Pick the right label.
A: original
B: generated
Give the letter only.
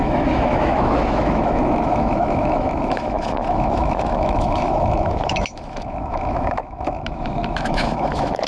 B